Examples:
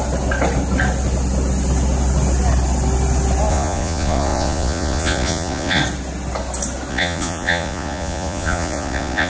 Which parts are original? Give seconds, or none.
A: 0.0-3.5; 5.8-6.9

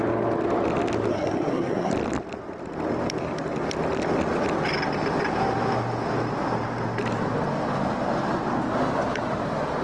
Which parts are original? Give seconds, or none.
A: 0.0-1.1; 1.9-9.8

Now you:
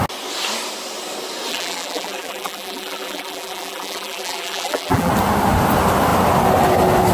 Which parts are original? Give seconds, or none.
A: 0.0-1.5; 5.1-7.1

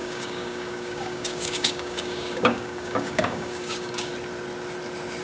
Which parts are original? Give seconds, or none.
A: 4.1-5.2